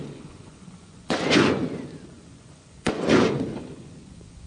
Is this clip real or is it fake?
fake